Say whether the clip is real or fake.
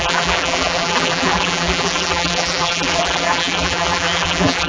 fake